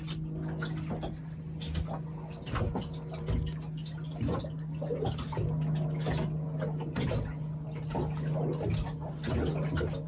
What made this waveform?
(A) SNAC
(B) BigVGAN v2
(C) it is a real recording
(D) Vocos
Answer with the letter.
C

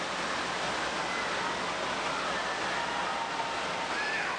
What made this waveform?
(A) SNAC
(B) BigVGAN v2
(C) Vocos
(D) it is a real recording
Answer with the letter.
D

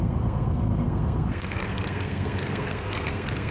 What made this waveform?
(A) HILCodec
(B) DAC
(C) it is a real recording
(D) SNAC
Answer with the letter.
D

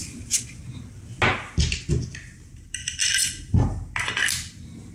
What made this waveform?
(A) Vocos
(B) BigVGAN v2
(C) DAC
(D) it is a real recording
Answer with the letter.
D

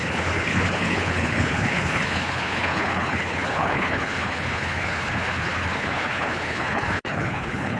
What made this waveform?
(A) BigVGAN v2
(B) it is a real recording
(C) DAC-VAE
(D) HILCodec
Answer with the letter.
D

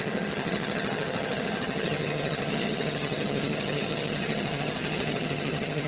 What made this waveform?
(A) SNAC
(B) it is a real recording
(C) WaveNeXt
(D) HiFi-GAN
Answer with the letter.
D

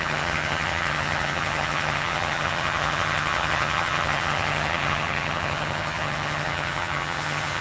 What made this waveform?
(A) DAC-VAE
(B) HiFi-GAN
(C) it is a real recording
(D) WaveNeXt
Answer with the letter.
B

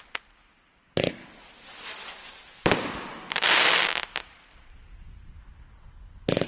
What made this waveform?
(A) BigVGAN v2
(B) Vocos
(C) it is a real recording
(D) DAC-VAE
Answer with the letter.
C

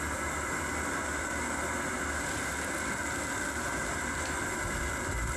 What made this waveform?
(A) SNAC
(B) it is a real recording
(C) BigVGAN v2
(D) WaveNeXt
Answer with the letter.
B